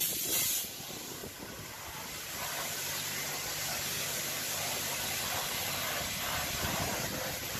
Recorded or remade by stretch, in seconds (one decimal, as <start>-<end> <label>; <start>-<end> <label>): 0.0-1.2 remade; 1.2-2.3 recorded; 2.3-7.6 remade